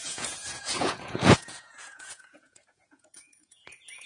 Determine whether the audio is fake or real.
fake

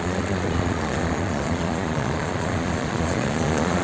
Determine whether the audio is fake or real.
fake